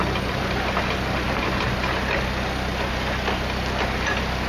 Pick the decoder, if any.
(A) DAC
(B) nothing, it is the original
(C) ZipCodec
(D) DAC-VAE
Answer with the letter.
B